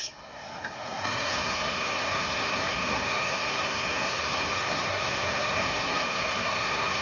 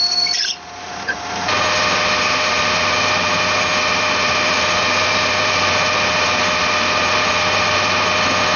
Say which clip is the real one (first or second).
second